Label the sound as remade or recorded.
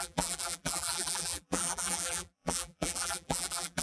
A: remade